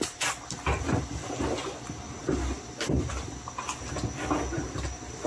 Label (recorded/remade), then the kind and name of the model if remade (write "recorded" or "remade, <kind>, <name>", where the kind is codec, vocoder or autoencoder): recorded